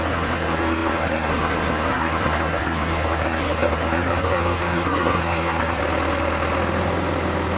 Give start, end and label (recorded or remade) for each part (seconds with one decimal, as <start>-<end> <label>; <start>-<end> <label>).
0.0-5.8 remade; 5.8-7.6 recorded